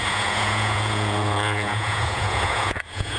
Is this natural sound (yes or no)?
no